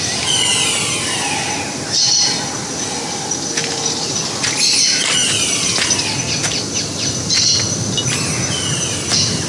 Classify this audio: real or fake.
real